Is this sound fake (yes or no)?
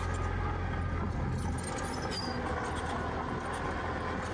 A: no